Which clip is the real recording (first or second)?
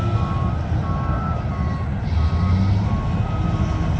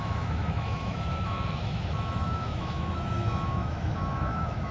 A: first